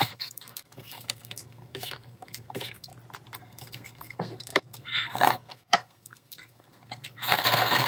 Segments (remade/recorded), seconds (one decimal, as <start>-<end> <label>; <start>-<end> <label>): 0.0-2.9 remade; 2.9-3.4 recorded; 3.4-7.9 remade